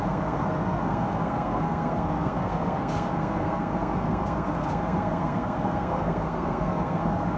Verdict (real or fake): fake